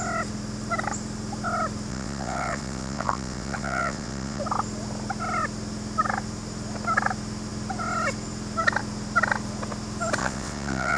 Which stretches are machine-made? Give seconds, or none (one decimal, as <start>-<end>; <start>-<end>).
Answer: 1.9-4.4; 10.2-11.0

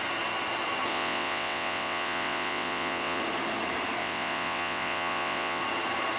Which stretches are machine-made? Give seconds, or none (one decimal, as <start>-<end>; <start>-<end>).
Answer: 0.9-3.2; 4.0-5.6